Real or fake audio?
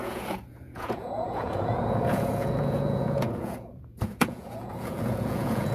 fake